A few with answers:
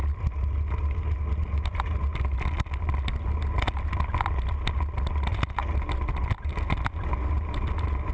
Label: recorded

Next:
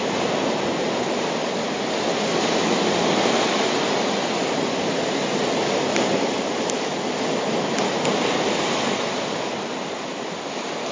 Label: recorded